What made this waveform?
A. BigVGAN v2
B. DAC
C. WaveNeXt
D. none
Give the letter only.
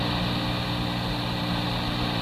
D